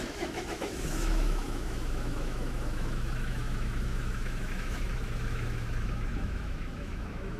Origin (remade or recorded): remade